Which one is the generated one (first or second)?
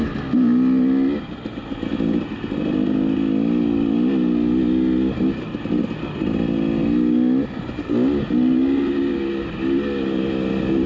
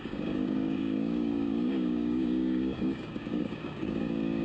second